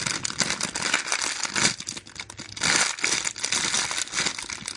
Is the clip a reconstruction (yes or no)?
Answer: no